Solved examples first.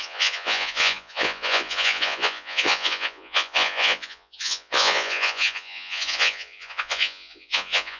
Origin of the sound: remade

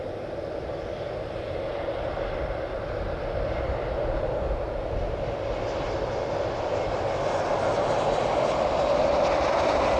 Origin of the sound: recorded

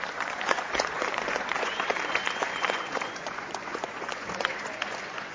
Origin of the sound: remade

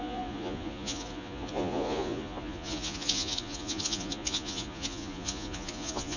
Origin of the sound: remade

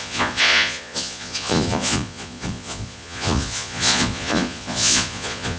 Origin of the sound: remade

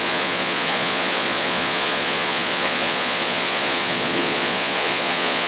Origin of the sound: remade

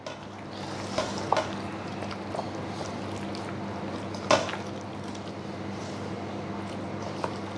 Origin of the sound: recorded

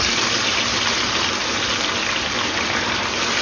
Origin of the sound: recorded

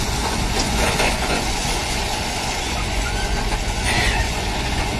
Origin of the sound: remade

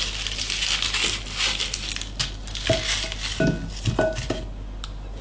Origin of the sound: recorded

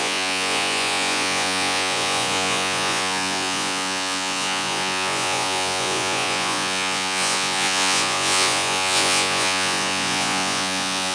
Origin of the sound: remade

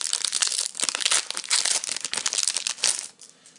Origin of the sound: recorded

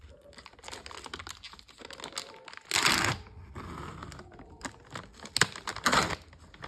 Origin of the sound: recorded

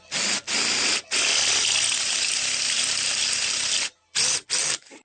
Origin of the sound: recorded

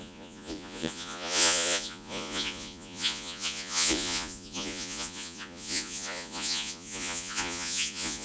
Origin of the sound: remade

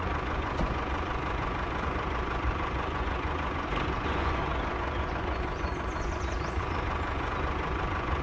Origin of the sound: remade